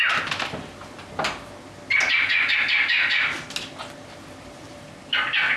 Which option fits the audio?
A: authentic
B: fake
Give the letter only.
A